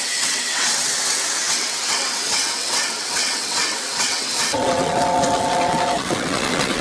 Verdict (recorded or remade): remade